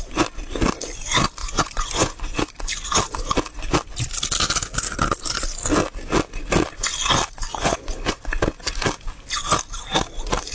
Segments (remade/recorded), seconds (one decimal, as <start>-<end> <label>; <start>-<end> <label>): 0.0-1.4 recorded; 1.4-2.4 remade; 2.4-7.5 recorded; 7.5-8.2 remade; 8.2-10.5 recorded